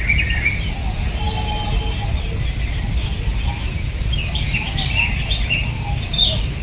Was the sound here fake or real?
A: real